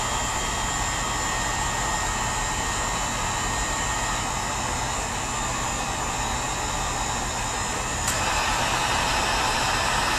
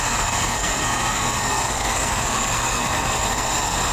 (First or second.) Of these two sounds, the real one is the first